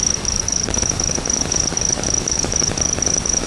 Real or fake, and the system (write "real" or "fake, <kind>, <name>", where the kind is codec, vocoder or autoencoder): fake, codec, DAC